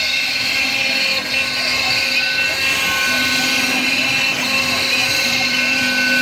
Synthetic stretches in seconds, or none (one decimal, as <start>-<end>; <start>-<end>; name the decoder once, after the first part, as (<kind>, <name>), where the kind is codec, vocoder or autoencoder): 5.0-5.8 (vocoder, BigVGAN v2)